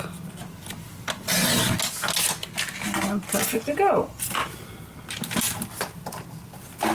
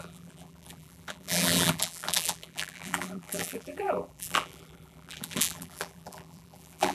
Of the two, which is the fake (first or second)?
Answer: second